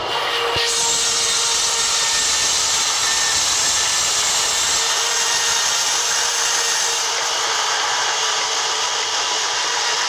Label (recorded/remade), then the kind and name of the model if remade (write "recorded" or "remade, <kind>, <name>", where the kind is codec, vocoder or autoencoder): recorded